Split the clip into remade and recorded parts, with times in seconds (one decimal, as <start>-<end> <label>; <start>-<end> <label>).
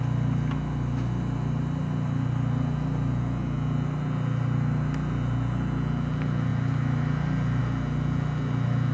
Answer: 0.0-8.9 recorded